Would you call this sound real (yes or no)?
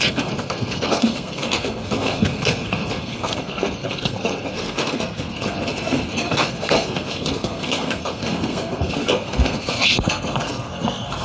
no